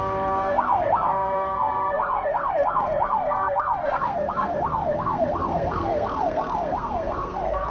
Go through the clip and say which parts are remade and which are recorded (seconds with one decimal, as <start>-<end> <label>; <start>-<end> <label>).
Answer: 0.0-7.7 remade

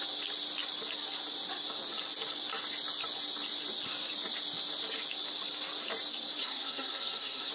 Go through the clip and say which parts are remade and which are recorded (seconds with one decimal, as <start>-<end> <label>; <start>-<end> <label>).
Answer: 0.0-6.4 recorded; 6.4-7.5 remade

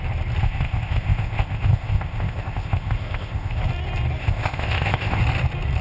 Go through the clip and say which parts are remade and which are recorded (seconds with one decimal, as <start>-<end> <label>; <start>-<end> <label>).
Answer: 0.0-0.4 recorded; 0.4-3.6 remade; 3.6-4.2 recorded; 4.2-5.2 remade; 5.2-5.8 recorded

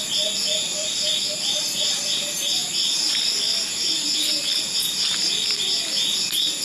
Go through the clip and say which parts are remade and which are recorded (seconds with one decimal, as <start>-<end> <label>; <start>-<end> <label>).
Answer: 0.0-6.6 recorded

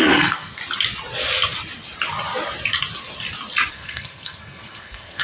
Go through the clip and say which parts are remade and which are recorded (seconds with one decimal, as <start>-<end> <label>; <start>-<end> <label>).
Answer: 0.0-0.6 remade; 0.6-3.7 recorded; 3.7-5.2 remade

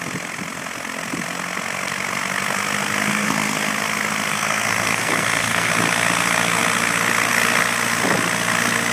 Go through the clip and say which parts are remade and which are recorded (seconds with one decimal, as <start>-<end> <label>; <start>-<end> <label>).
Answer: 0.0-3.1 recorded; 3.1-3.7 remade; 3.7-4.3 recorded; 4.3-5.7 remade; 5.7-8.9 recorded

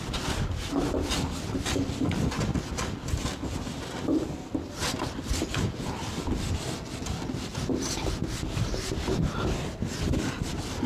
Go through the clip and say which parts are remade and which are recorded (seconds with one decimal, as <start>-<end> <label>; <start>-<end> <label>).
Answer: 0.0-10.9 recorded

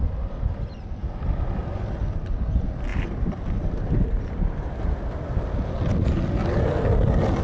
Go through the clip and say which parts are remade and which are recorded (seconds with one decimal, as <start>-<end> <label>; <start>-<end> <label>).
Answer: 0.0-2.9 recorded; 2.9-5.0 remade; 5.0-7.4 recorded